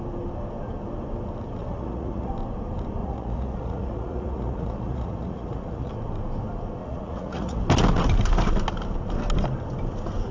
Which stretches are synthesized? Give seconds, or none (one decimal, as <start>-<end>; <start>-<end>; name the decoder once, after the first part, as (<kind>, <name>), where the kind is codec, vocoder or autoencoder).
1.6-2.3 (vocoder, Vocos); 3.0-5.9; 6.8-7.6